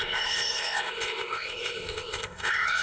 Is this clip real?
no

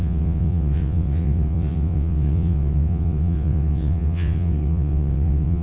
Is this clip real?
no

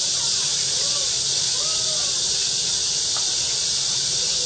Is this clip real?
yes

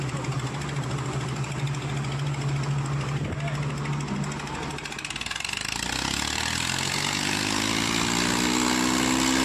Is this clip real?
yes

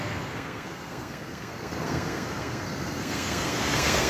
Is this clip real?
no